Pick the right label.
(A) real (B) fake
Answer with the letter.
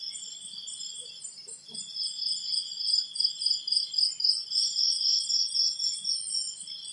A